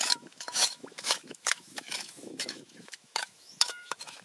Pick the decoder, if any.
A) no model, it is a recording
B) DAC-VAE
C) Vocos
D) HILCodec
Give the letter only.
B